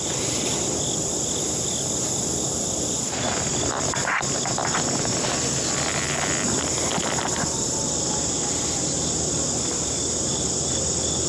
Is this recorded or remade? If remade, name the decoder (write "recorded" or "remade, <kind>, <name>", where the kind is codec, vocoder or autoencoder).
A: recorded